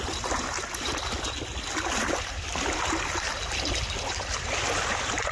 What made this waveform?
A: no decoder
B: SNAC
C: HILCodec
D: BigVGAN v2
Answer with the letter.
A